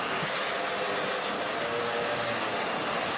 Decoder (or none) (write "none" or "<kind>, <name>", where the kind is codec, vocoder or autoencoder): none